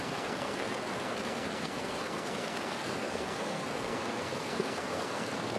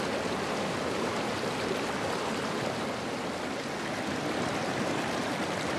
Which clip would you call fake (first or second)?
first